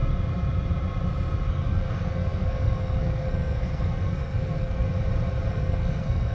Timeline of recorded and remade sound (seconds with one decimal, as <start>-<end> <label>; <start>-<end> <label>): 0.0-1.5 recorded; 1.5-4.9 remade; 4.9-5.5 recorded; 5.5-6.3 remade